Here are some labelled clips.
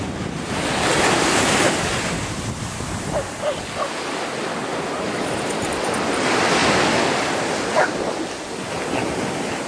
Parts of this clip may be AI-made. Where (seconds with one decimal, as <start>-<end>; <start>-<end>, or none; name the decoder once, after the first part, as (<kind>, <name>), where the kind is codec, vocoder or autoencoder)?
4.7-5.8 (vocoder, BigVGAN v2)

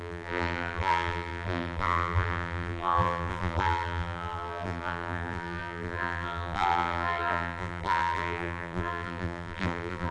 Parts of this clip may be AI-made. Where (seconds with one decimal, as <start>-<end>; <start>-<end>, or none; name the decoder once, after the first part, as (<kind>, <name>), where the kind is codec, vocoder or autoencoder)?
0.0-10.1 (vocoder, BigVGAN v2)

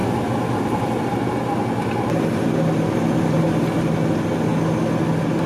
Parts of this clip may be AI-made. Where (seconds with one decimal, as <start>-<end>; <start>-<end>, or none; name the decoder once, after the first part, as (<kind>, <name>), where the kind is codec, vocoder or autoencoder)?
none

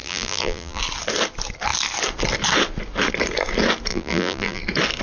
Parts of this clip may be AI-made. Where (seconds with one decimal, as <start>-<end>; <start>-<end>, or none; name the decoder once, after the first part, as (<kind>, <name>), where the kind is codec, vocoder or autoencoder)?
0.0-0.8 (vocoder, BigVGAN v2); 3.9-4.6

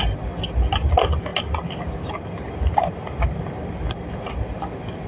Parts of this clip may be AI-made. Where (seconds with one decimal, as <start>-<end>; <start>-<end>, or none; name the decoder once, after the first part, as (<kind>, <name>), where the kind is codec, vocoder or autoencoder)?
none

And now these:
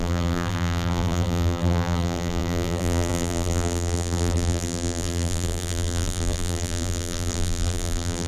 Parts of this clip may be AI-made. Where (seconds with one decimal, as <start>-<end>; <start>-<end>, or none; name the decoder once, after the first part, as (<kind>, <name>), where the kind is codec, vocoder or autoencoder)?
0.0-8.3 (vocoder, BigVGAN v2)

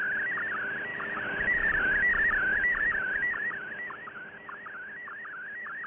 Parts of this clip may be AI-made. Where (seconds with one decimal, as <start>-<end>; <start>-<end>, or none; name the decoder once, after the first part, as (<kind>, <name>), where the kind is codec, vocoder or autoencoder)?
0.9-1.7 (vocoder, BigVGAN v2); 2.5-3.7